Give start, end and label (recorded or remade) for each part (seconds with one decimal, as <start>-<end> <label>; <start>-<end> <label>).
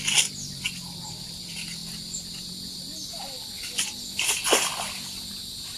0.0-5.8 recorded